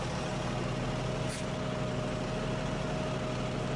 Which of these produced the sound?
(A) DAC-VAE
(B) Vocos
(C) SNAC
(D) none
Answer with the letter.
D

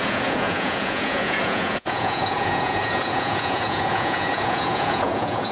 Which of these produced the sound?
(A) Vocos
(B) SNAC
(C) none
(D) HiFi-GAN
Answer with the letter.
A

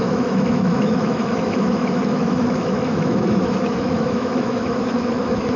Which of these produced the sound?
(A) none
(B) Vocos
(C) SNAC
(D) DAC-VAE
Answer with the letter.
D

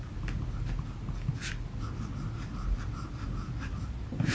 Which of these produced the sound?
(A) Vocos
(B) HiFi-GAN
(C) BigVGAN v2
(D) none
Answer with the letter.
D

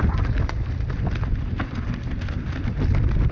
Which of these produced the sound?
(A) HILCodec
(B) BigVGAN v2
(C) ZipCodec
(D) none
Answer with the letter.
D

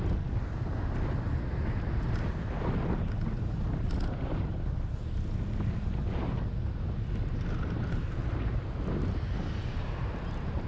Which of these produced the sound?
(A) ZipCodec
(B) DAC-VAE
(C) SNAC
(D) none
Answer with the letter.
D